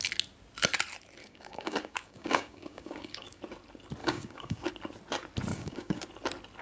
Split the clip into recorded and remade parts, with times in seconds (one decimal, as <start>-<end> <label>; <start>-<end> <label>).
0.0-1.2 recorded; 1.2-3.4 remade; 3.4-4.0 recorded; 4.0-4.7 remade; 4.7-5.5 recorded; 5.5-6.0 remade; 6.0-6.6 recorded